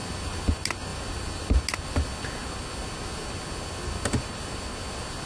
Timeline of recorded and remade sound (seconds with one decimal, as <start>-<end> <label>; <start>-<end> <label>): 0.0-5.3 recorded